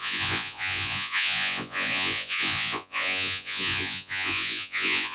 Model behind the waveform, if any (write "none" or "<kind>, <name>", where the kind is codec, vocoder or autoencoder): vocoder, Vocos